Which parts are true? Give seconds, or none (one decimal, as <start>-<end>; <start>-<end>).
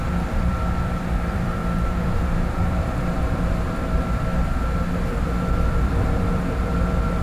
none